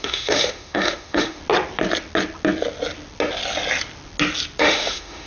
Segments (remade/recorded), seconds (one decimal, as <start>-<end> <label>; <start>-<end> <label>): 0.0-1.4 remade; 1.4-4.6 recorded; 4.6-5.3 remade